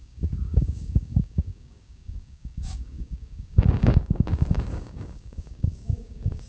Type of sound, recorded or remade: remade